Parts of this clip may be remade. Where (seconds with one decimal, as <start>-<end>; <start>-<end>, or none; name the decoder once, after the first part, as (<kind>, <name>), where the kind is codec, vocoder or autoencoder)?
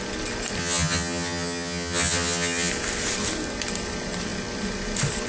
0.6-2.7 (vocoder, HiFi-GAN)